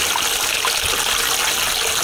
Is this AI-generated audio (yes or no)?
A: no